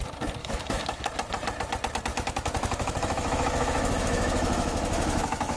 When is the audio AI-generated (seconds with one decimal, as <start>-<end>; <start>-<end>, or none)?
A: 0.4-1.1; 2.1-5.6